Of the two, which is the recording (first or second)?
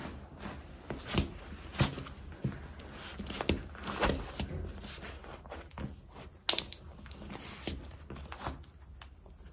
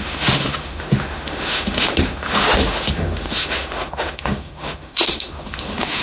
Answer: first